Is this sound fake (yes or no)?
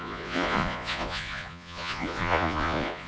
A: yes